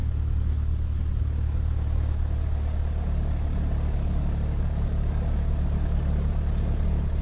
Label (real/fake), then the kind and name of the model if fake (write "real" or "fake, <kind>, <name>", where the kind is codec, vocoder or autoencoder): real